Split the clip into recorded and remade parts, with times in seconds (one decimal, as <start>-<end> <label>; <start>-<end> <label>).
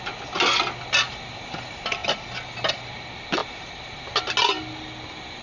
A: 0.0-5.4 recorded